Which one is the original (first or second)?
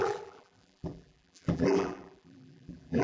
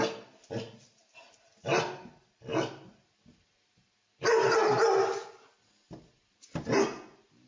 second